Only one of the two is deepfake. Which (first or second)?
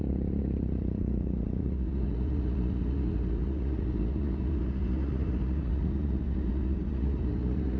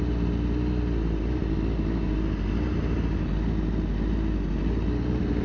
first